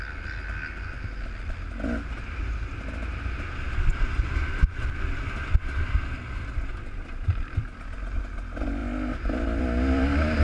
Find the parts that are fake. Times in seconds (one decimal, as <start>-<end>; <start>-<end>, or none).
none